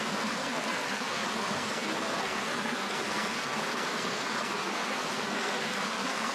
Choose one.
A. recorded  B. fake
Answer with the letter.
B